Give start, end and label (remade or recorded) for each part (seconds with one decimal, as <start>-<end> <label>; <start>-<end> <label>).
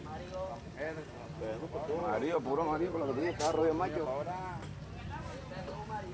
0.0-6.1 recorded